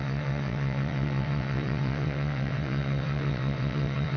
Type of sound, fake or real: fake